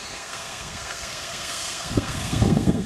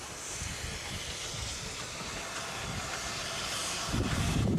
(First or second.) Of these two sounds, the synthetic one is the first